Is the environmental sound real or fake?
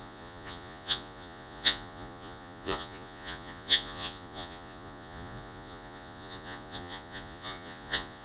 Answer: fake